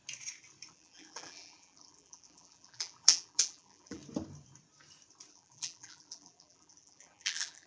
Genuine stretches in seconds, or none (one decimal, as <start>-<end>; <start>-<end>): 0.0-0.7; 4.0-5.3